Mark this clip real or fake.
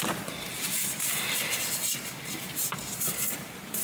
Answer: fake